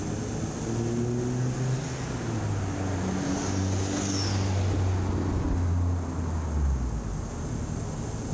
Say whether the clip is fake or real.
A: real